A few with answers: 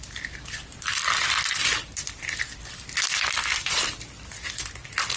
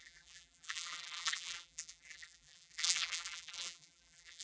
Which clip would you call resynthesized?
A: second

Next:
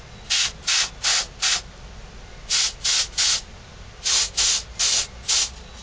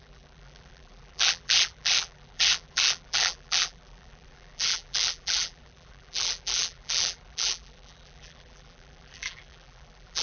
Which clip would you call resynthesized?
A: second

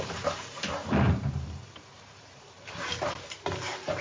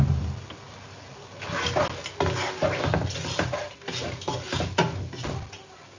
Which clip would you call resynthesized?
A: first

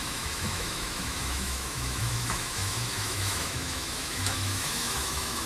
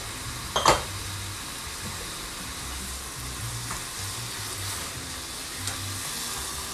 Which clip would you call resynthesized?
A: first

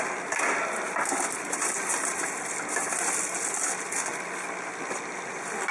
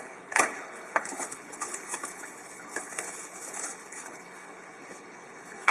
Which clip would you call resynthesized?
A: second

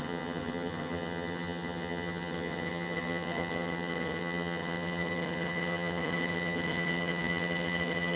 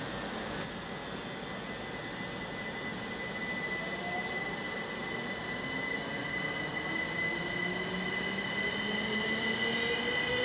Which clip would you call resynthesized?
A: first